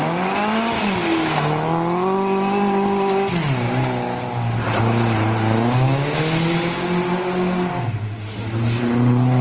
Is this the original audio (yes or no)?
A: yes